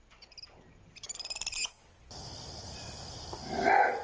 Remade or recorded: recorded